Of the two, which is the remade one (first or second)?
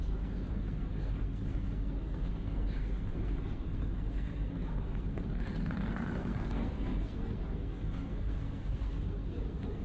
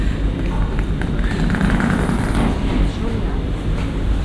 first